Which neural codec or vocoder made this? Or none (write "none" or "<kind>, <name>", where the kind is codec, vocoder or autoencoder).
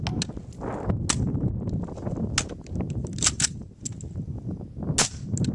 none